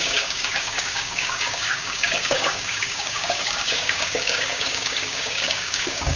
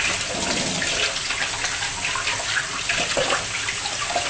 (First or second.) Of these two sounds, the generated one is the first